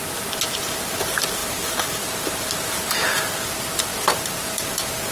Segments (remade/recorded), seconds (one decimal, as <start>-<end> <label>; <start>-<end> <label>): 0.0-1.4 recorded; 1.4-3.5 remade; 3.5-5.1 recorded